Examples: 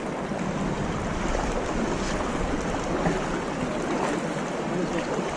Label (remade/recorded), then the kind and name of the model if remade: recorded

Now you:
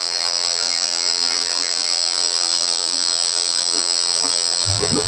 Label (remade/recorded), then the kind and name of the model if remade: remade, vocoder, BigVGAN v2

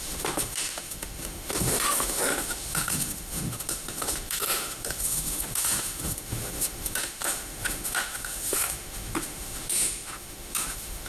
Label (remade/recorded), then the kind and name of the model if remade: remade, autoencoder, DAC-VAE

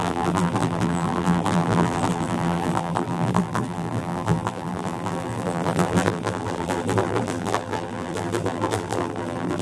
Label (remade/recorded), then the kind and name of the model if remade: remade, vocoder, BigVGAN v2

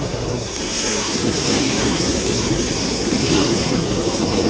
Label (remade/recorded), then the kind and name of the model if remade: remade, codec, SNAC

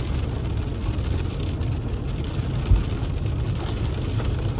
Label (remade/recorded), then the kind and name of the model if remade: recorded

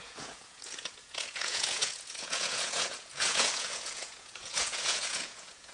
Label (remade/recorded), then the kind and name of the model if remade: remade, vocoder, Vocos